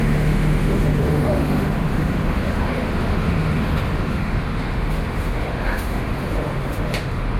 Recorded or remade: remade